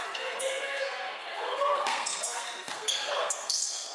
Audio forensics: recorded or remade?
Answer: remade